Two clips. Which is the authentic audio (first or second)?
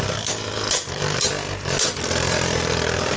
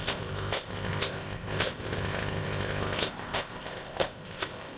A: first